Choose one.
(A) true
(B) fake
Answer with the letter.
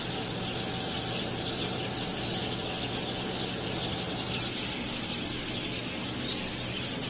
A